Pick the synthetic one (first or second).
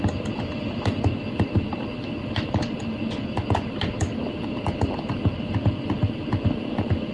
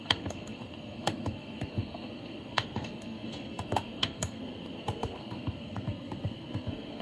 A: second